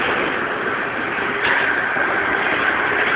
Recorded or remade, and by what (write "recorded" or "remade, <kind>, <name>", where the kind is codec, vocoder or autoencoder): recorded